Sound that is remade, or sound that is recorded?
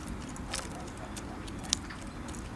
recorded